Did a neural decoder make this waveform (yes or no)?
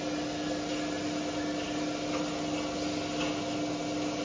no